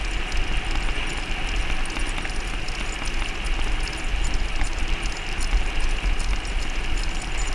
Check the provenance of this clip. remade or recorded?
recorded